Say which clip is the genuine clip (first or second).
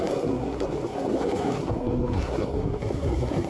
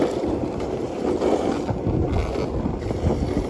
second